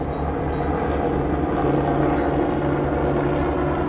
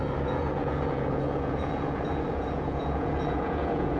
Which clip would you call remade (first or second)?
second